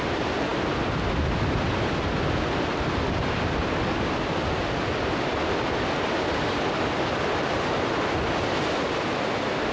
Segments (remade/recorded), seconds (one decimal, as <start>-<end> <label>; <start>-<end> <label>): 0.0-9.7 recorded